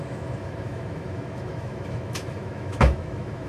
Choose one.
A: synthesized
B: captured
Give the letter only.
A